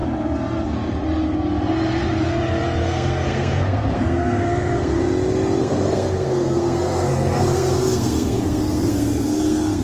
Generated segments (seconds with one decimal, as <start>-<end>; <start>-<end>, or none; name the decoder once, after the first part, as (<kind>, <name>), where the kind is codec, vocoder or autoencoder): 2.8-5.0 (codec, SNAC); 5.6-9.8